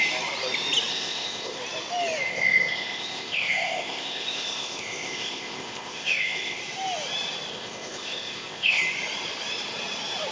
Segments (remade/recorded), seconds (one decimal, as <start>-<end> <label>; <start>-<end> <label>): 0.0-0.9 recorded; 0.9-1.6 remade; 1.6-2.3 recorded; 2.3-6.6 remade; 6.6-7.5 recorded; 7.5-8.8 remade; 8.8-10.3 recorded